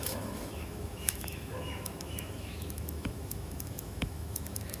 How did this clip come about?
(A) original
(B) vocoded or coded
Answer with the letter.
B